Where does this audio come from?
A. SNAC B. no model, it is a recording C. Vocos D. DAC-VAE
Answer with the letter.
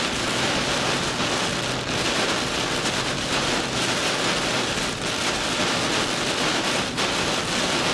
B